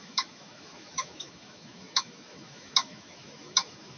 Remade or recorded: remade